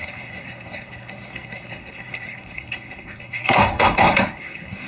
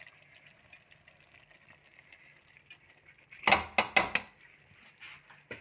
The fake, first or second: first